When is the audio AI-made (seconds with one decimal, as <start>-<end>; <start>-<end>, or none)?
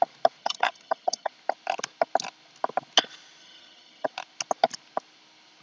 0.4-1.3; 3.4-4.1